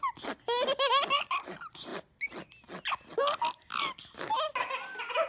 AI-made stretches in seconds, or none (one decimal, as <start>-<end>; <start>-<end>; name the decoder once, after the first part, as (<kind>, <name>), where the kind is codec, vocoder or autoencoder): none